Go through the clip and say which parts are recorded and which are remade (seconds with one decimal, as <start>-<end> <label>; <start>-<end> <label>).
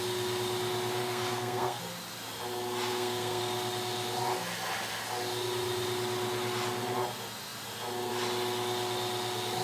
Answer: 0.0-1.0 recorded; 1.0-1.8 remade; 1.8-2.9 recorded; 2.9-3.4 remade; 3.4-9.6 recorded